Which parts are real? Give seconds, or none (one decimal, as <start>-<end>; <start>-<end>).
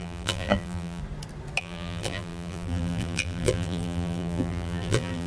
1.0-1.6